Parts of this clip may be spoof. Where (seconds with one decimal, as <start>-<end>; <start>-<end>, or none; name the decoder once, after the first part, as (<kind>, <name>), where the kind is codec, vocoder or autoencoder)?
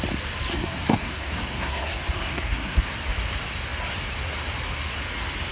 0.5-2.8 (codec, SNAC)